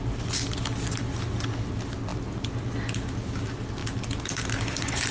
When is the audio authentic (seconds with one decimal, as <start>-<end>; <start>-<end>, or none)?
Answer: 0.0-5.1